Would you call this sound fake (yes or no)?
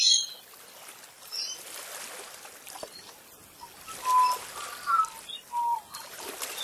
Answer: no